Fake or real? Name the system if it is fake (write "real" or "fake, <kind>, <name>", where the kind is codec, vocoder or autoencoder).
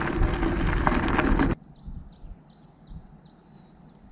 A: real